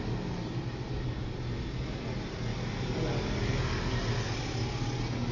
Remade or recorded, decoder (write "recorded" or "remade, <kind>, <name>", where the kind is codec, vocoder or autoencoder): recorded